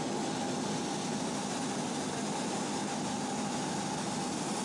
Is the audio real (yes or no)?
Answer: yes